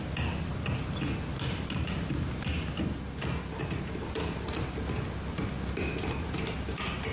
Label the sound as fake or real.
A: real